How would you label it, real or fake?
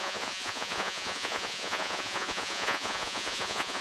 fake